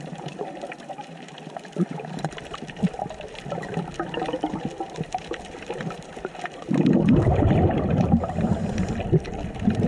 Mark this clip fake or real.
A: fake